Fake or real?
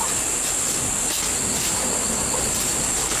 real